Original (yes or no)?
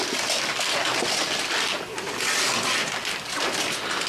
yes